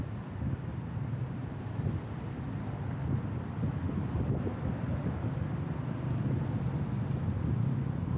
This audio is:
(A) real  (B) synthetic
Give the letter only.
A